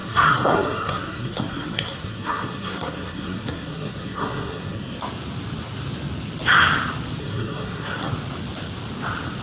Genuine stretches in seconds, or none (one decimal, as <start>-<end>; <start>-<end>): 5.0-7.2; 8.1-9.4